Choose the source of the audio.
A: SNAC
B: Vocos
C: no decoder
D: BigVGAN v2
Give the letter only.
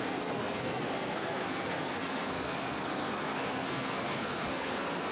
A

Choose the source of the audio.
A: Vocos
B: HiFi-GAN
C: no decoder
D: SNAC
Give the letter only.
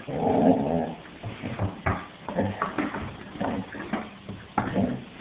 C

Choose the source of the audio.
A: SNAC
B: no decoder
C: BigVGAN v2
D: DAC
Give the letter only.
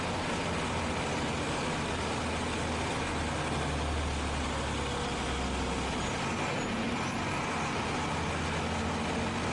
B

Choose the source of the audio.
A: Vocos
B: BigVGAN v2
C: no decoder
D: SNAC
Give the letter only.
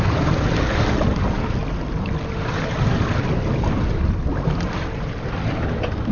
C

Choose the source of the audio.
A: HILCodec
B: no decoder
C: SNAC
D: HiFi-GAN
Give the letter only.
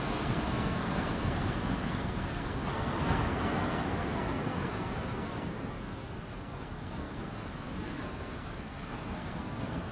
C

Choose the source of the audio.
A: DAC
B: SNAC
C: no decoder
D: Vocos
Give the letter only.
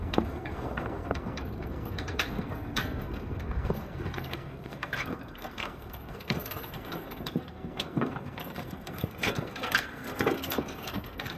B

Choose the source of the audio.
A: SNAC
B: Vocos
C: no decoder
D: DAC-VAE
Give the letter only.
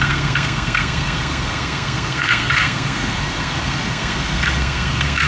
A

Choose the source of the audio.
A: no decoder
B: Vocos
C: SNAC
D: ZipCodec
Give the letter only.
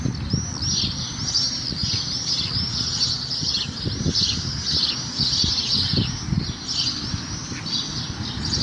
A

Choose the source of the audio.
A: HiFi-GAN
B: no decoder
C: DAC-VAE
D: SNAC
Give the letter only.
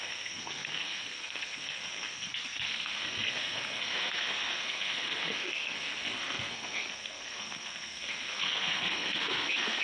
D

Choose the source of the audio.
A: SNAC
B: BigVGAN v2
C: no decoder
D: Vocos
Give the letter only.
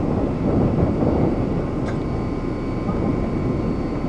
C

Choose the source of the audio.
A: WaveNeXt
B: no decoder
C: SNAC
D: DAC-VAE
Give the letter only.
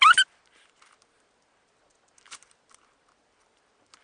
B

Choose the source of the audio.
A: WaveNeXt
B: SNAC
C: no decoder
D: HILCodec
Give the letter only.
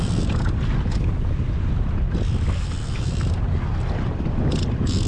C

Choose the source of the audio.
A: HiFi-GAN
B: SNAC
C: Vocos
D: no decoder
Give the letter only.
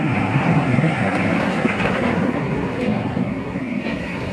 B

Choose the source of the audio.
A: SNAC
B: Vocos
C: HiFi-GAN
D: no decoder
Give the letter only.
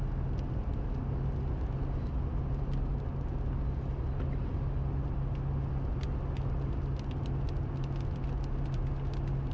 D